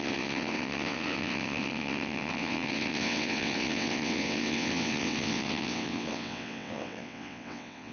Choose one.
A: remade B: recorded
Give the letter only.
A